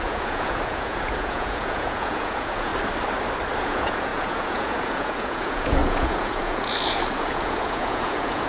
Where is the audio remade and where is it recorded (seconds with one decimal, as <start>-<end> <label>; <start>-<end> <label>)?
0.0-2.7 remade; 2.7-3.6 recorded; 3.6-8.5 remade